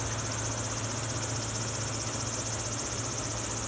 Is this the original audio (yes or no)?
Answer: yes